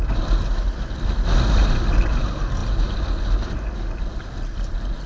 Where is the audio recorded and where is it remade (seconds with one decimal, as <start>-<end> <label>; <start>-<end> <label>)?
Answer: 0.0-5.1 recorded